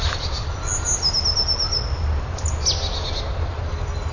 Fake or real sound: real